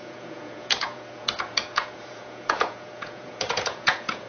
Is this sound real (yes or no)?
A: no